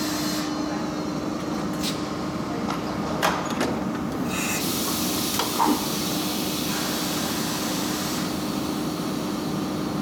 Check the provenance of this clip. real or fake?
real